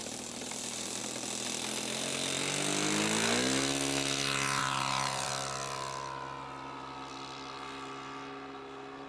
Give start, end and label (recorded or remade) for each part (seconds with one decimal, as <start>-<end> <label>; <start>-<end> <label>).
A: 0.0-1.0 remade; 1.0-4.6 recorded; 4.6-5.3 remade; 5.3-9.1 recorded